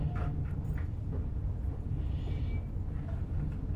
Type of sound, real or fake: real